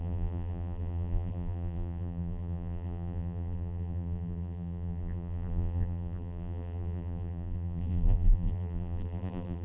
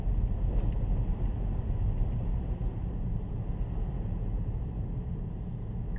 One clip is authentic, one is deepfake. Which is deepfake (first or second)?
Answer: first